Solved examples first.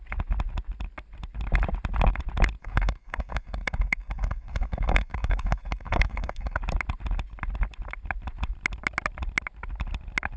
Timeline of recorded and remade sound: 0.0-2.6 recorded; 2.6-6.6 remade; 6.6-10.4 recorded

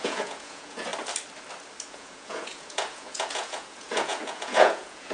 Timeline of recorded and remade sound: 0.0-0.9 remade; 0.9-1.9 recorded; 1.9-5.1 remade